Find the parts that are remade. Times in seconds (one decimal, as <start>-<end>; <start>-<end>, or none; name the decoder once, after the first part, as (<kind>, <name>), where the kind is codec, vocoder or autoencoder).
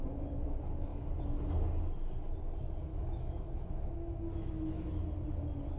2.9-4.9 (autoencoder, DAC-VAE)